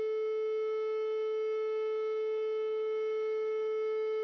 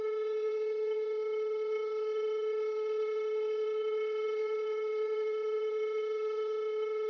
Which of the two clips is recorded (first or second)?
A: first